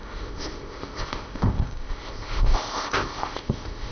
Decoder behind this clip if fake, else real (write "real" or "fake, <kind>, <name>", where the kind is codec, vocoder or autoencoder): fake, codec, ZipCodec